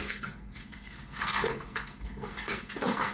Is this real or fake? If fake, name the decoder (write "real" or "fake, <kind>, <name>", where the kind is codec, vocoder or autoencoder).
fake, codec, SNAC